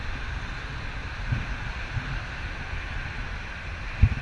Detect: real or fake real